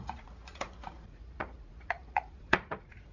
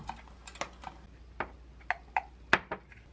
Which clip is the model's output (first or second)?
first